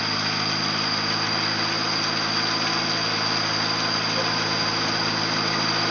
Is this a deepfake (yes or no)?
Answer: no